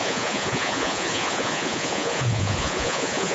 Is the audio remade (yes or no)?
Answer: yes